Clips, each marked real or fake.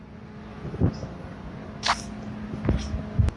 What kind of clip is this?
real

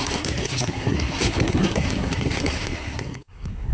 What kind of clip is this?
fake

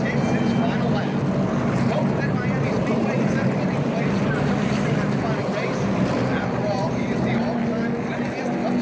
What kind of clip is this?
real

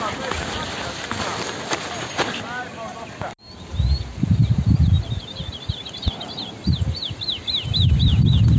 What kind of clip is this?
real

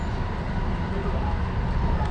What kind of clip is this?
real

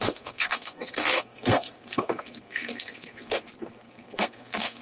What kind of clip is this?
fake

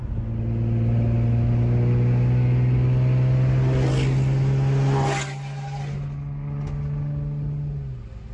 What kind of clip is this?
real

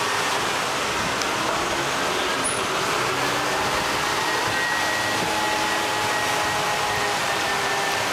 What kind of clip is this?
real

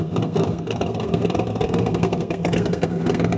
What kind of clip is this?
fake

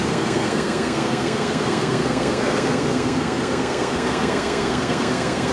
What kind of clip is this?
fake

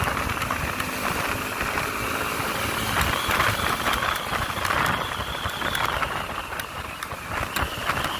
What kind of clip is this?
real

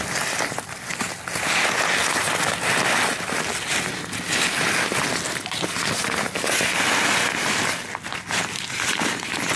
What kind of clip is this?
real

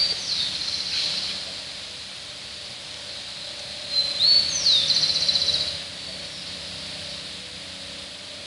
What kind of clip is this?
real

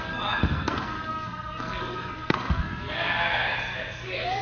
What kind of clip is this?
fake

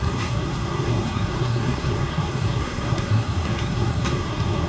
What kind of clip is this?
fake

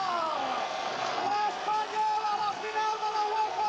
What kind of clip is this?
fake